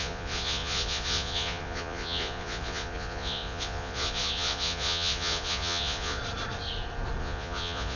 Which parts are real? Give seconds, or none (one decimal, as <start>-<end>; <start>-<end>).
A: 6.2-7.2